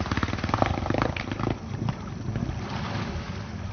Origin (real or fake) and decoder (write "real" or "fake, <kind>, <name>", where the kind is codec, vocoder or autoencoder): real